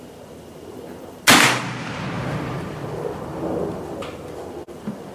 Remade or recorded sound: recorded